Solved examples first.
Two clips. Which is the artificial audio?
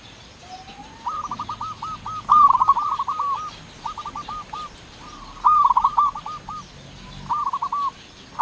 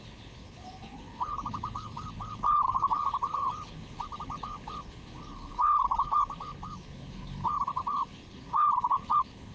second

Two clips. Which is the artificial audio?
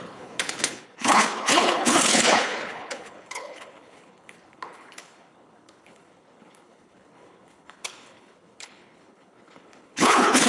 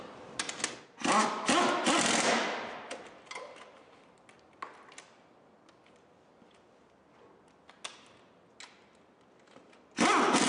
first